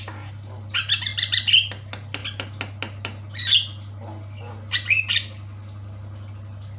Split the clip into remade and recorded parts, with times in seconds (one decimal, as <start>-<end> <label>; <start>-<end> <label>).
0.0-6.8 recorded